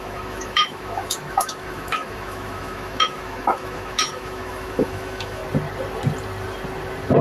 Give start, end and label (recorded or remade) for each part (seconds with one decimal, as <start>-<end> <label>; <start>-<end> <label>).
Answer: 0.0-5.4 remade; 5.4-7.2 recorded